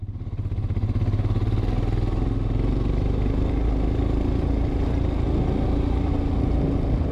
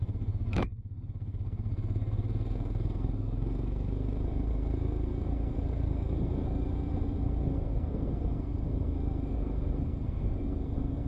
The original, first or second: first